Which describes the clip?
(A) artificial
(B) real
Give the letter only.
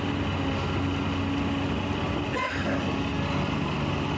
B